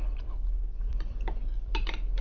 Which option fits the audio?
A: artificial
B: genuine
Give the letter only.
A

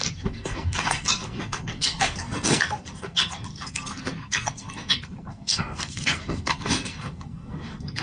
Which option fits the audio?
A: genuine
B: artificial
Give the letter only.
B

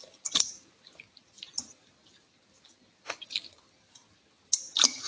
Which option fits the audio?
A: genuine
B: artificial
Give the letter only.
A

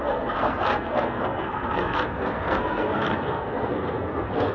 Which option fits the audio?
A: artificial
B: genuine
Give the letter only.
A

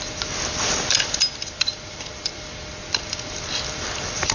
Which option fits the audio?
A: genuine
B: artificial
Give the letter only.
A